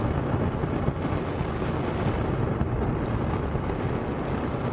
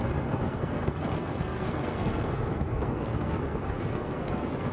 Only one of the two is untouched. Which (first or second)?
first